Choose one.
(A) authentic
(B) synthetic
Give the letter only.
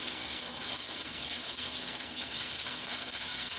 B